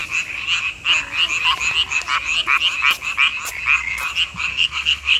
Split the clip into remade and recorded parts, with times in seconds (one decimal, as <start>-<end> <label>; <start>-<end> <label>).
0.0-4.5 recorded; 4.5-5.2 remade